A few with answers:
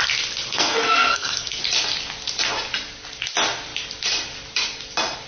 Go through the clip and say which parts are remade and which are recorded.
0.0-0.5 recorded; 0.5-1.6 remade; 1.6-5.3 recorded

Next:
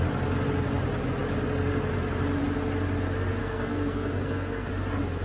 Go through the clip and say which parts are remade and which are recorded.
0.0-3.4 recorded; 3.4-4.7 remade; 4.7-5.2 recorded

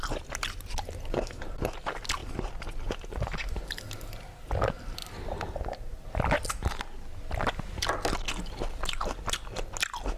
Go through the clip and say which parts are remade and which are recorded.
0.0-10.2 recorded

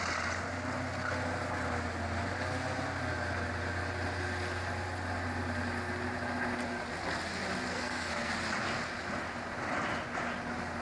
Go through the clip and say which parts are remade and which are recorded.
0.0-7.7 recorded; 7.7-8.3 remade; 8.3-10.8 recorded

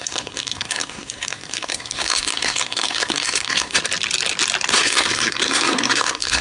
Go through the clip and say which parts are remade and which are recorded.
0.0-3.8 remade; 3.8-4.7 recorded; 4.7-6.4 remade

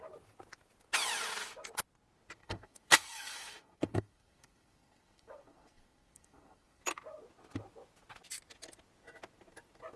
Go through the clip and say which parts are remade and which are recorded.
0.0-2.4 recorded; 2.4-6.8 remade; 6.8-10.0 recorded

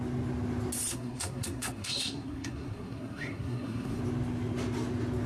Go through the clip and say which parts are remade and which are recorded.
0.0-0.9 recorded; 0.9-4.0 remade; 4.0-5.3 recorded

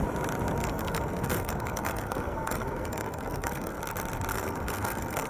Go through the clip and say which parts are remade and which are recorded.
0.0-0.6 recorded; 0.6-3.8 remade; 3.8-4.3 recorded; 4.3-5.3 remade